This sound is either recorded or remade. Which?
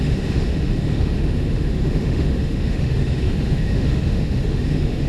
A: remade